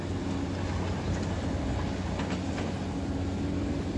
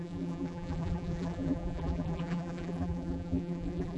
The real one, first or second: first